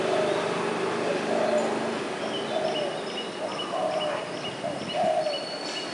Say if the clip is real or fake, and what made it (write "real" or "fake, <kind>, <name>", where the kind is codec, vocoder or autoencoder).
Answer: real